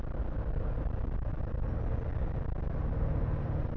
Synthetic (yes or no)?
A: no